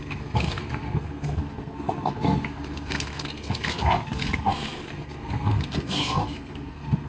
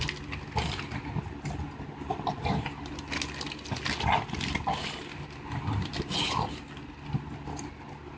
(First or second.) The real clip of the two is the second